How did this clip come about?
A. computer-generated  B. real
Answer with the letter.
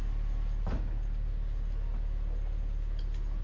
B